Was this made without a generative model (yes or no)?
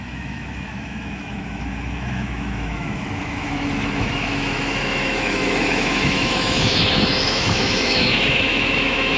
no